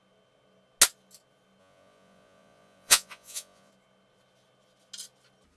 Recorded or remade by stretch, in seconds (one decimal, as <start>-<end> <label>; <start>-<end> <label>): 0.0-1.6 recorded; 1.6-3.7 remade; 3.7-5.6 recorded

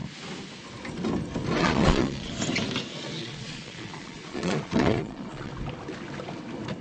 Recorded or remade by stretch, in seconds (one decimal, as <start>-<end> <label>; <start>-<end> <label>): 0.0-1.6 recorded; 1.6-2.3 remade; 2.3-2.9 recorded; 2.9-5.5 remade; 5.5-6.8 recorded

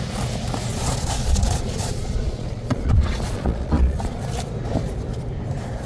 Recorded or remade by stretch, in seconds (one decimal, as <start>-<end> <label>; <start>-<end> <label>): 0.0-0.7 recorded; 0.7-4.2 remade; 4.2-5.9 recorded

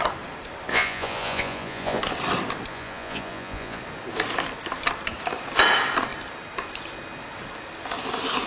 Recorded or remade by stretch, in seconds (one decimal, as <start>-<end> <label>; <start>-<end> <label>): 0.0-0.7 recorded; 0.7-2.0 remade; 2.0-2.7 recorded; 2.7-3.8 remade; 3.8-8.5 recorded